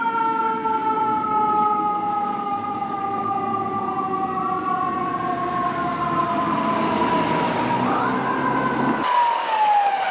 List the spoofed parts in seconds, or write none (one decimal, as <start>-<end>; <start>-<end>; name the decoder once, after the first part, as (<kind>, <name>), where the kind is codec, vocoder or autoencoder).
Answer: 0.0-3.5 (codec, DAC); 7.7-8.4; 9.0-10.1